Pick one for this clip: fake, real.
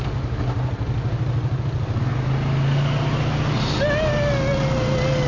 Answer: real